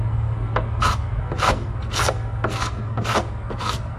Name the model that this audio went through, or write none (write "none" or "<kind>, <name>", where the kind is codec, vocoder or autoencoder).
codec, SNAC